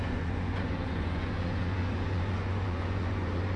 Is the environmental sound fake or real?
fake